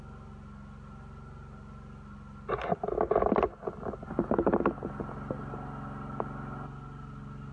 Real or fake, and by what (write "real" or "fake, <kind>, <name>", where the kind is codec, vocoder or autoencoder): real